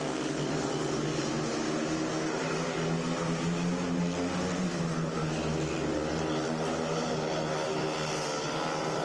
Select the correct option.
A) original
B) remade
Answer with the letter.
A